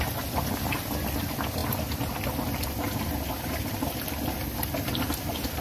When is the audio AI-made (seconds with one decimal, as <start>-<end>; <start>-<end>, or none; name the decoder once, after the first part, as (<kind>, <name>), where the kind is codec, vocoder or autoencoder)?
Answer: 0.0-1.6 (vocoder, BigVGAN v2); 5.0-5.6